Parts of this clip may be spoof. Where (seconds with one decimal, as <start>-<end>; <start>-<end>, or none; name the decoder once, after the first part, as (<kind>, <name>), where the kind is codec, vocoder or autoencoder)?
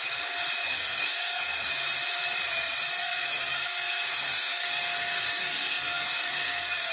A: 0.6-1.7 (codec, SNAC); 2.9-6.9